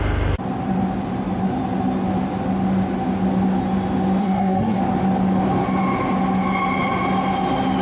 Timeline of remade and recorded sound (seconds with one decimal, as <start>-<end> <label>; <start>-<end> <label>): 0.0-4.2 recorded; 4.2-4.8 remade; 4.8-7.8 recorded